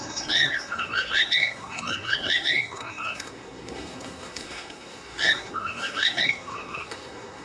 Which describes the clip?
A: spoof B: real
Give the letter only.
A